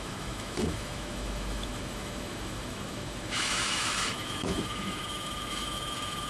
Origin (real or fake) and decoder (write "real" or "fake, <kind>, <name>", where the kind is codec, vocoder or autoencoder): fake, autoencoder, DAC-VAE